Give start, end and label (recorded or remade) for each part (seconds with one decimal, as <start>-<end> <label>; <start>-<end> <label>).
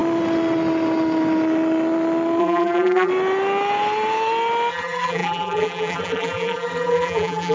0.0-2.4 recorded; 2.4-3.1 remade; 3.1-4.7 recorded; 4.7-7.5 remade